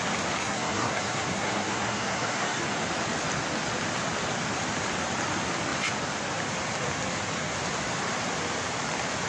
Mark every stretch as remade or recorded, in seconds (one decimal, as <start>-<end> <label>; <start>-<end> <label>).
0.0-0.4 recorded; 0.4-2.6 remade; 2.6-9.3 recorded